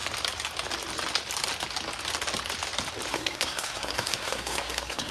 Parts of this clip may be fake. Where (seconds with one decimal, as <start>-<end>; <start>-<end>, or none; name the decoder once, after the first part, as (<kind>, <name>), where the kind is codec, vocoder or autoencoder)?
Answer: 3.1-5.1 (codec, SNAC)